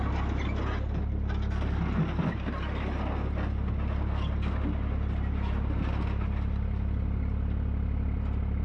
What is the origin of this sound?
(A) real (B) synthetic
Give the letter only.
A